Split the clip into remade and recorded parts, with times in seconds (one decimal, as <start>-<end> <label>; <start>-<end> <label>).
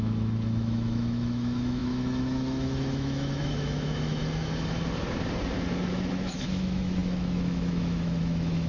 0.0-4.2 remade; 4.2-6.1 recorded; 6.1-8.7 remade